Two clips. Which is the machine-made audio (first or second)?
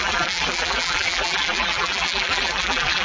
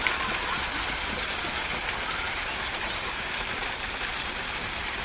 first